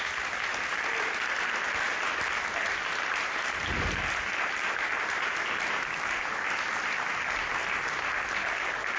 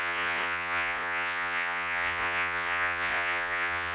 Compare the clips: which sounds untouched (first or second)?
first